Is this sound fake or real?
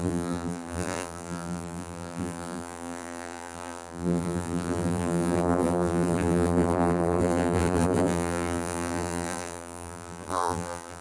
fake